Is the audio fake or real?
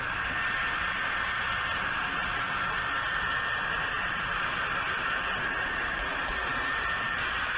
real